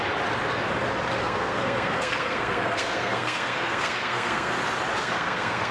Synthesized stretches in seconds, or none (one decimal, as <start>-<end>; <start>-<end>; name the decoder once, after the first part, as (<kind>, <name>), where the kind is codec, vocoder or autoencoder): 1.2-4.5 (codec, SNAC); 5.0-5.7